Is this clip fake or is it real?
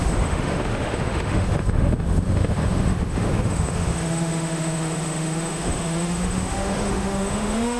fake